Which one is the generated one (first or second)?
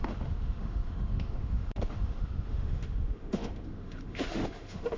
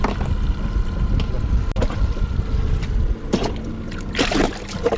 first